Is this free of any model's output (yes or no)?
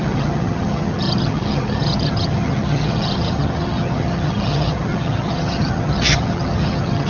no